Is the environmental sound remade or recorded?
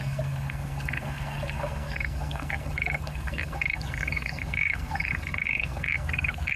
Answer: remade